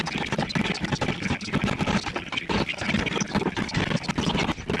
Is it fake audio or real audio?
real